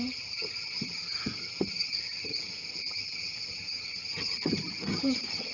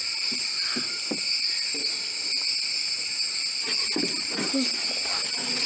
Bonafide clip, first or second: second